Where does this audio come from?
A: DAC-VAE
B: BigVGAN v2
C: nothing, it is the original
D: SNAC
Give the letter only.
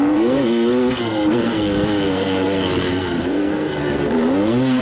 D